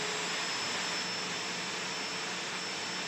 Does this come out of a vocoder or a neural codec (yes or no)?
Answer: no